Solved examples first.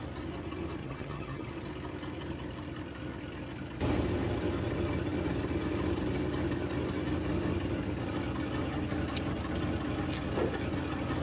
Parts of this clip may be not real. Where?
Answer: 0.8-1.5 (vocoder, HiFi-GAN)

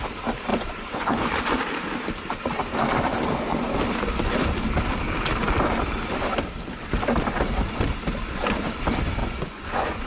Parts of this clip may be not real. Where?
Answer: 0.5-1.3 (vocoder, Vocos); 9.2-10.1

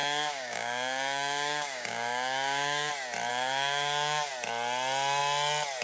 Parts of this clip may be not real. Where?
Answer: 0.0-2.9 (codec, DAC); 3.3-4.3

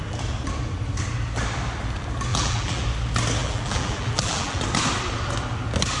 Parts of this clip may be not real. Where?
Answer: 2.3-2.8 (vocoder, BigVGAN v2); 3.4-4.6

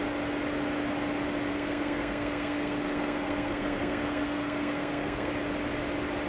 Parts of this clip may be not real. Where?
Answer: 1.5-5.3 (codec, SNAC)

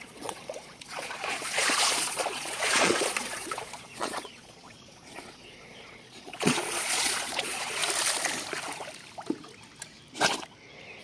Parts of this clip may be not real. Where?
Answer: 0.0-7.8 (vocoder, Vocos)

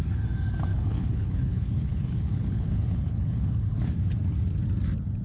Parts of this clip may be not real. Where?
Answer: 0.7-3.5 (codec, HILCodec)